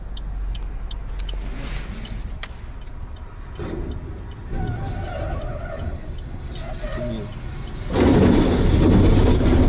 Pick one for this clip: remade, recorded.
recorded